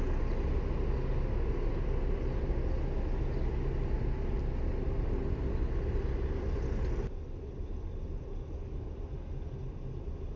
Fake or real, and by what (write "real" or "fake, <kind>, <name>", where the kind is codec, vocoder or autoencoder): real